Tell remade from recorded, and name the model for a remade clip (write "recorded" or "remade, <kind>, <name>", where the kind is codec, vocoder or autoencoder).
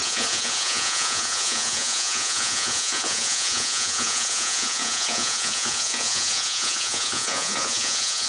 remade, vocoder, Vocos